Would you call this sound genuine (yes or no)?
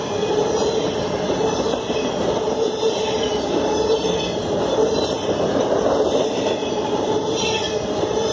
yes